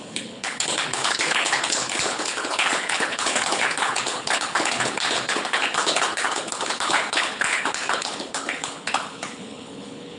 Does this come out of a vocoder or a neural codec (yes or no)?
yes